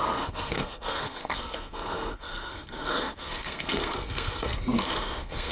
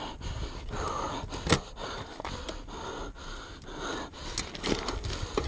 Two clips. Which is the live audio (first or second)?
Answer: second